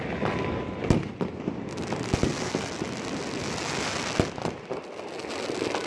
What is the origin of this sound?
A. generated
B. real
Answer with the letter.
B